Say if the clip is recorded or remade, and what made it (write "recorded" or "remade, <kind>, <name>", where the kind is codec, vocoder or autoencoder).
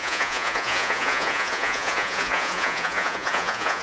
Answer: remade, vocoder, Vocos